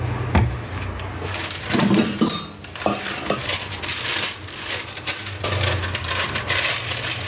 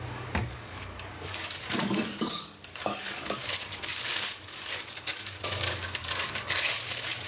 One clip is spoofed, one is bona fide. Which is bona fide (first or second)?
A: first